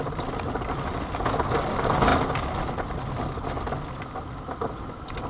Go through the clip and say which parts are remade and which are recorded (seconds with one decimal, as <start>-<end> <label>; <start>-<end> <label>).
0.0-5.3 recorded

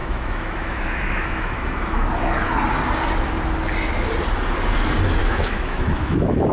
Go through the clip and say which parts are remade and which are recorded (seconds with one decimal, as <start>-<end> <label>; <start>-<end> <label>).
0.0-2.1 remade; 2.1-5.2 recorded; 5.2-6.5 remade